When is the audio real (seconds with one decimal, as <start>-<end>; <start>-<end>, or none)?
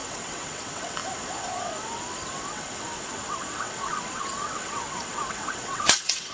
none